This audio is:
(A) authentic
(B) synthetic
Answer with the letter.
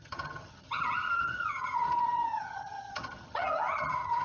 B